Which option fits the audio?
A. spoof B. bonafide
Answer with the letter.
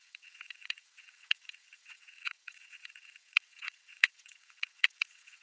A